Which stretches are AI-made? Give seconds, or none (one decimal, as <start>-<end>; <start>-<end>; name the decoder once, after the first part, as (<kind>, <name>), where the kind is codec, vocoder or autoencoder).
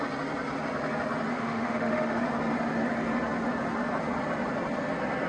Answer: 1.3-2.2 (autoencoder, DAC-VAE)